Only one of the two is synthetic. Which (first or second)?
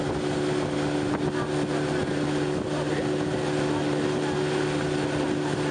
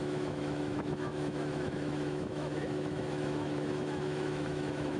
second